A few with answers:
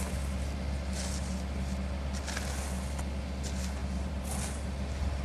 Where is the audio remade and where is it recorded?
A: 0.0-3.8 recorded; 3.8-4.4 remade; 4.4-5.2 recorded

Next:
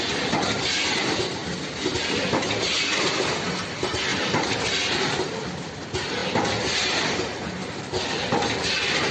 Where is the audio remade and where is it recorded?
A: 0.0-4.1 recorded; 4.1-4.8 remade; 4.8-7.6 recorded; 7.6-8.2 remade; 8.2-9.1 recorded

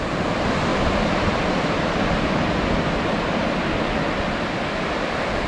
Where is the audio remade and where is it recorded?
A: 0.0-5.5 recorded